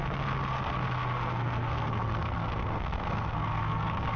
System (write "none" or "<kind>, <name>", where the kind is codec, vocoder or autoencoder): codec, SNAC